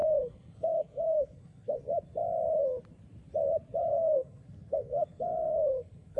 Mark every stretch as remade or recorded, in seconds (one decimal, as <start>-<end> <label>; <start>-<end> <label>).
0.0-1.8 remade; 1.8-3.9 recorded; 3.9-6.2 remade